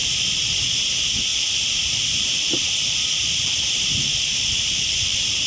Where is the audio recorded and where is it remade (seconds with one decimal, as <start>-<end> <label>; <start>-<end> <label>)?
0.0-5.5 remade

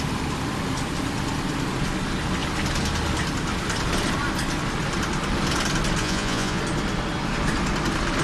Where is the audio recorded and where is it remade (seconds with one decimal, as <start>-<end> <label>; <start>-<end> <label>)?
0.0-6.0 recorded; 6.0-6.6 remade; 6.6-8.2 recorded

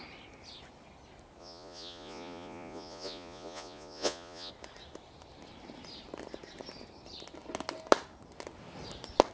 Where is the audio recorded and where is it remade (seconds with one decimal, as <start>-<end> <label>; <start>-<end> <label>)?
0.0-1.4 recorded; 1.4-4.5 remade; 4.5-9.3 recorded

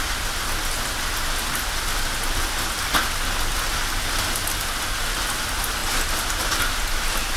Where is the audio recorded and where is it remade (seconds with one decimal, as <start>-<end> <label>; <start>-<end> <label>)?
0.0-7.4 recorded